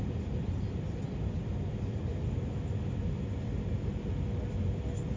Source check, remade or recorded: recorded